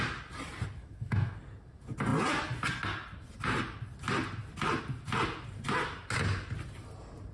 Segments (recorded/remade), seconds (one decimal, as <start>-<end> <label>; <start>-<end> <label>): 0.0-0.8 recorded; 0.8-1.4 remade; 1.4-7.3 recorded